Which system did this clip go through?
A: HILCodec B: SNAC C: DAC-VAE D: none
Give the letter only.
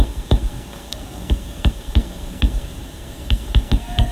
B